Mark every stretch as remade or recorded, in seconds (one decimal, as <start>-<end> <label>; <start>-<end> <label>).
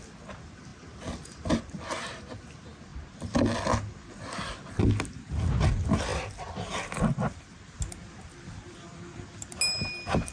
0.0-10.3 recorded